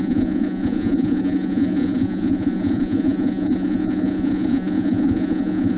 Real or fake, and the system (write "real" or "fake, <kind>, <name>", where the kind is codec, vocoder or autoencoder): fake, vocoder, Vocos